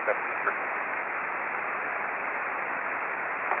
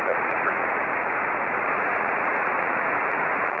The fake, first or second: second